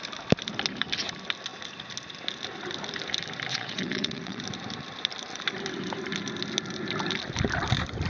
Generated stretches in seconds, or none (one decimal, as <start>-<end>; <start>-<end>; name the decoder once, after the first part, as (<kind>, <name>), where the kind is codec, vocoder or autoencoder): 3.5-4.4 (vocoder, Vocos)